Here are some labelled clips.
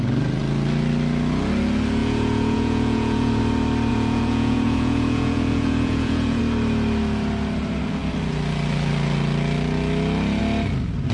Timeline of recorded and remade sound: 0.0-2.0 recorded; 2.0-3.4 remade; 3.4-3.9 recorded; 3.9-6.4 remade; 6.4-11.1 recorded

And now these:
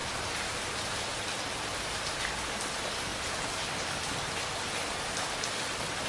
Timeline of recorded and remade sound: 0.0-6.1 recorded

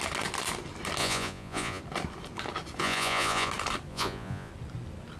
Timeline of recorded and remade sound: 0.0-1.0 recorded; 1.0-1.8 remade; 1.8-2.8 recorded; 2.8-3.5 remade; 3.5-3.9 recorded; 3.9-4.5 remade; 4.5-5.2 recorded

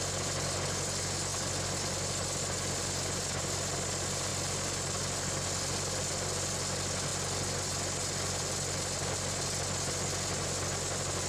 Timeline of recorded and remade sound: 0.0-11.3 recorded

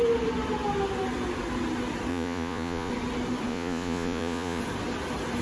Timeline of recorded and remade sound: 0.0-2.1 recorded; 2.1-2.9 remade; 2.9-3.5 recorded; 3.5-4.6 remade; 4.6-5.4 recorded

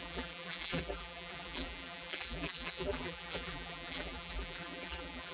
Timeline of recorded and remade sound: 0.0-5.3 remade

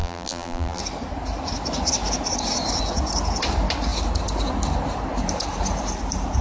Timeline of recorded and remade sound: 0.0-0.8 remade; 0.8-6.4 recorded

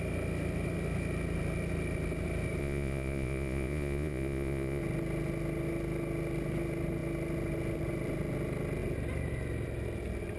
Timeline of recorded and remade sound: 0.0-2.6 recorded; 2.6-4.8 remade; 4.8-10.4 recorded